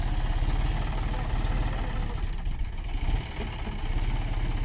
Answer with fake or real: real